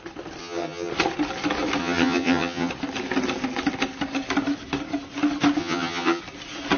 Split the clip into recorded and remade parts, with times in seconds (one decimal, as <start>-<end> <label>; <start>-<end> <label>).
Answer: 0.0-0.4 recorded; 0.4-0.9 remade; 0.9-1.8 recorded; 1.8-2.7 remade; 2.7-5.6 recorded; 5.6-6.2 remade; 6.2-6.8 recorded